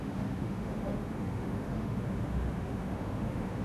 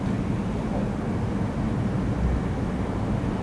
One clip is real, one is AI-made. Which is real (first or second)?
second